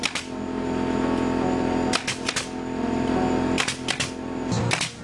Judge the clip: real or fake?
real